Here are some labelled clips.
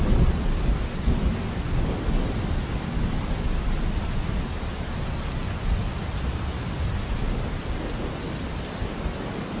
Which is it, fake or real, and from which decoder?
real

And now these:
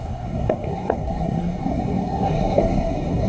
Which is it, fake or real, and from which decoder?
fake, codec, SNAC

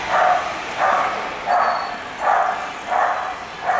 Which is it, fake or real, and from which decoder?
real